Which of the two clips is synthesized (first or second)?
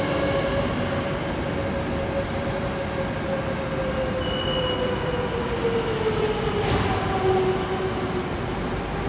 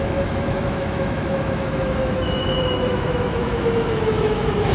second